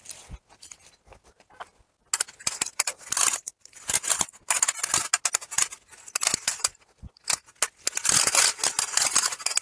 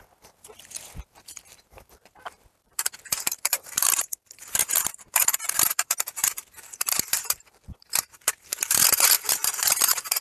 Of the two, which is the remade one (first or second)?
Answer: second